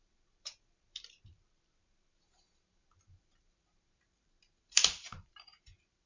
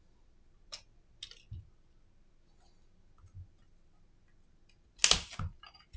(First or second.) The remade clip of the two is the first